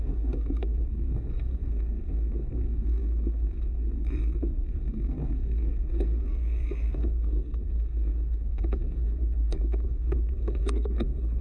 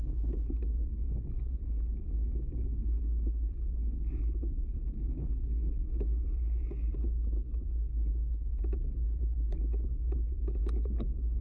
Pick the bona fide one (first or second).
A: second